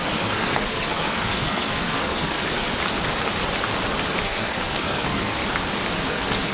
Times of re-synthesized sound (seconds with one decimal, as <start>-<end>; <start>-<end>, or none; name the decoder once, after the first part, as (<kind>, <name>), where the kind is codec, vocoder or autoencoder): 0.0-2.7 (codec, SNAC); 4.2-5.4; 6.1-6.5